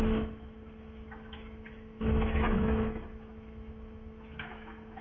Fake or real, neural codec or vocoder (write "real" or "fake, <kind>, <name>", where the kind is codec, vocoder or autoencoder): fake, autoencoder, DAC-VAE